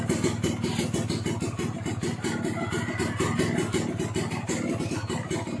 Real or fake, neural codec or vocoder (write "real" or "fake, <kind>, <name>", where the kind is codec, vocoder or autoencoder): real